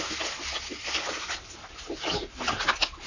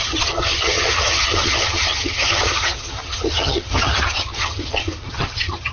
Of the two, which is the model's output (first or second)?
second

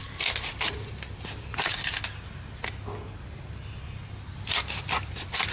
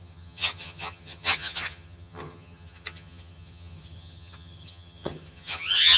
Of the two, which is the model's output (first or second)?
second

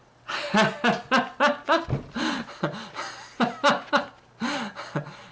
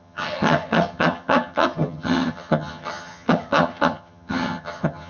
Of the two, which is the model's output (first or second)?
second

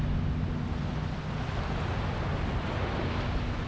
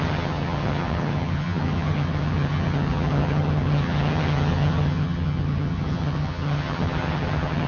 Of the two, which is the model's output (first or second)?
second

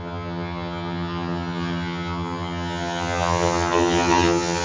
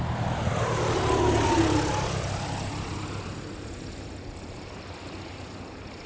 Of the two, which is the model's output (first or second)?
first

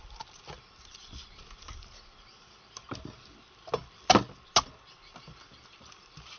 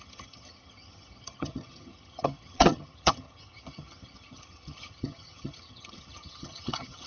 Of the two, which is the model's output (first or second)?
second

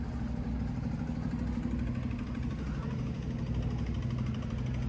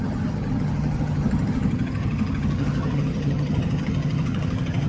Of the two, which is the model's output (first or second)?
second